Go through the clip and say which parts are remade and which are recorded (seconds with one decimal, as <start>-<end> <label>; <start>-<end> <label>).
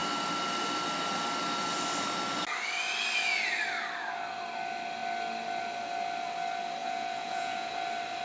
0.0-6.8 recorded; 6.8-7.7 remade; 7.7-8.2 recorded